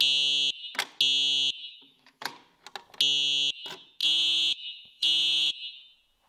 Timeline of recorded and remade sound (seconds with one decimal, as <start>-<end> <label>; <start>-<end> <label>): 0.0-1.7 recorded; 1.7-2.3 remade; 2.3-4.0 recorded; 4.0-5.5 remade; 5.5-6.3 recorded